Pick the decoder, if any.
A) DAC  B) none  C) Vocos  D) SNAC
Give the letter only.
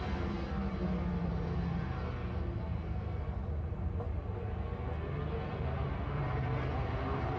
B